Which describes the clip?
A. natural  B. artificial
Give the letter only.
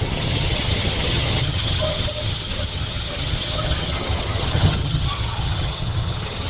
B